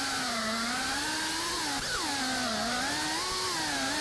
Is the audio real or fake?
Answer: real